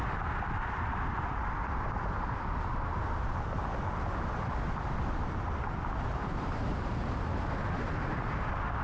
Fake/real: fake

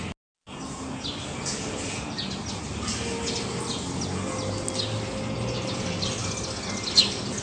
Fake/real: real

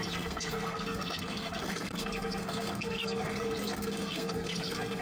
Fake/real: fake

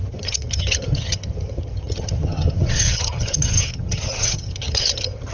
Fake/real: fake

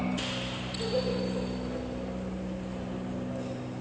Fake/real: real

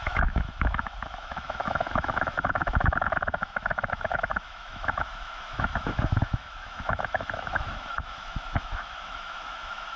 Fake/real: fake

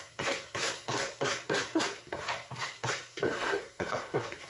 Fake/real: fake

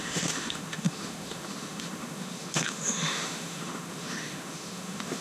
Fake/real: fake